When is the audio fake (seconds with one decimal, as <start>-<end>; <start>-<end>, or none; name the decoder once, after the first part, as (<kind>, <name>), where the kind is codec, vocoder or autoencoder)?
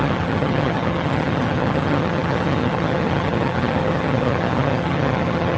0.0-5.6 (vocoder, HiFi-GAN)